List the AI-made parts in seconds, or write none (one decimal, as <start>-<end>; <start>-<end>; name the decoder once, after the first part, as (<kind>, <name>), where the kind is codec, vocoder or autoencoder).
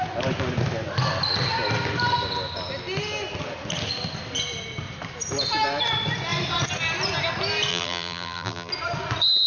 7.7-8.7 (vocoder, BigVGAN v2)